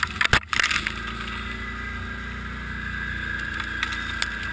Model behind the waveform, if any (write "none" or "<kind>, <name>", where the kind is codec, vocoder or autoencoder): none